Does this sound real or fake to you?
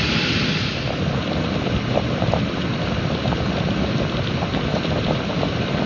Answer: fake